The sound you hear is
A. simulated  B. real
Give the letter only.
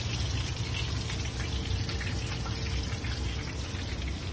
B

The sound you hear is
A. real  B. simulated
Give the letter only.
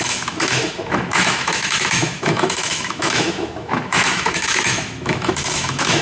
B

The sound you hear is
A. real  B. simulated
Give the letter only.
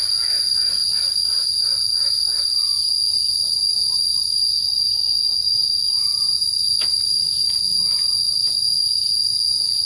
A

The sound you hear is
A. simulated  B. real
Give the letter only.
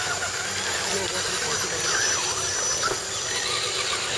B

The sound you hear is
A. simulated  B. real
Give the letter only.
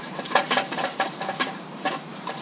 A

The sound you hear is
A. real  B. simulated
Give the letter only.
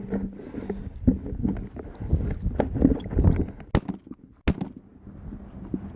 A